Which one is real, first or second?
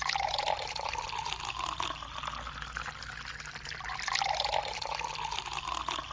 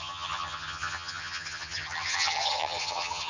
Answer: first